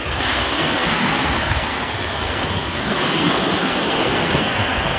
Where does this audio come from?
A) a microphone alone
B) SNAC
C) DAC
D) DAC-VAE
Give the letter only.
B